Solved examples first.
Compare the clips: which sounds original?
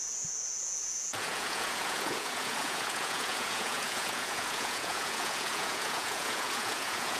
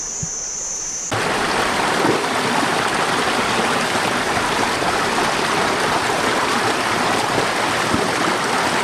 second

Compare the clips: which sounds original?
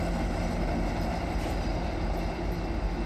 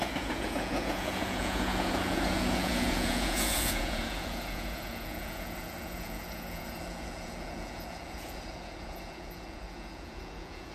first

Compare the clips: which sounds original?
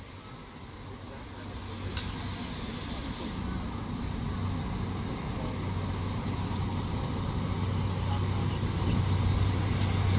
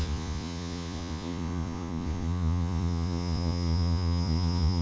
first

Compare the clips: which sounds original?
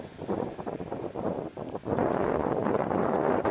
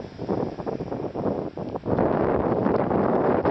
second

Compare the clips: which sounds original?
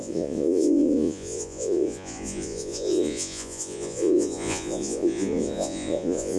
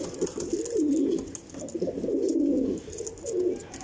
second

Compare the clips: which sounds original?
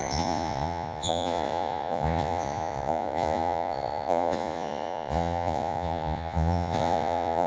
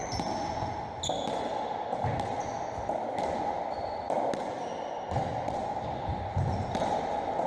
second